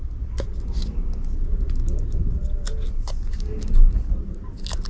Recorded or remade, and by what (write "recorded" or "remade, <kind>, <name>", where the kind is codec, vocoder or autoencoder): recorded